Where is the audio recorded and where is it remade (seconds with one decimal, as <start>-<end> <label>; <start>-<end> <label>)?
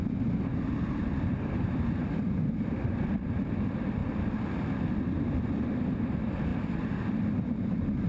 0.0-8.1 recorded